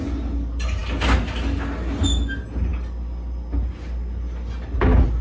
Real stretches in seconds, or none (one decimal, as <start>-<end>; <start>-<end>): 0.0-5.2